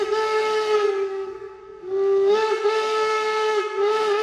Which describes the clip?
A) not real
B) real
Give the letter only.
A